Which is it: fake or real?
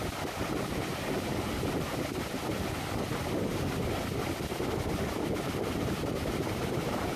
real